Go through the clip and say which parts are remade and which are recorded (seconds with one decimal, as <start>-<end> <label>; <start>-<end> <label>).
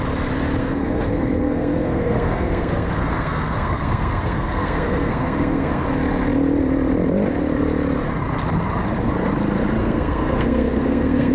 0.0-0.6 recorded; 0.6-5.8 remade; 5.8-9.8 recorded; 9.8-11.3 remade